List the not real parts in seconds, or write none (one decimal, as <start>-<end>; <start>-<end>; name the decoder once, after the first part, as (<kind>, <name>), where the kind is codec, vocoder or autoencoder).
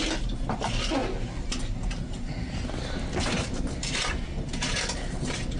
none